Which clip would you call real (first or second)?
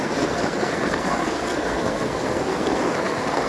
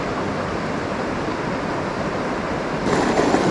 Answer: second